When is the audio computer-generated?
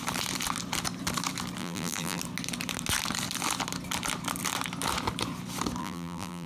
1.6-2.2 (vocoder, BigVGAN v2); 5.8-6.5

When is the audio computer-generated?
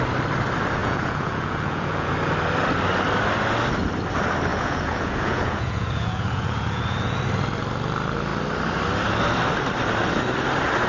0.8-2.1 (vocoder, Vocos); 4.5-7.2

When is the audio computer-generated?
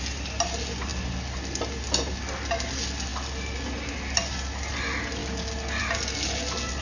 none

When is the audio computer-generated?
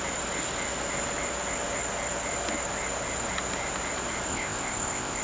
4.3-5.2 (codec, ZipCodec)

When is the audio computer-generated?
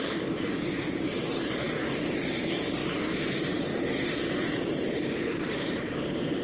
0.0-1.8 (vocoder, BigVGAN v2); 2.4-3.7; 4.6-6.4